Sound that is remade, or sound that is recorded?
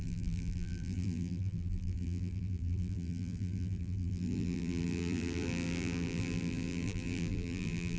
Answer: remade